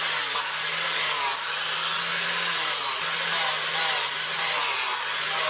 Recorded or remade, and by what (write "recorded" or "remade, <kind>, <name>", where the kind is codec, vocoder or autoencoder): recorded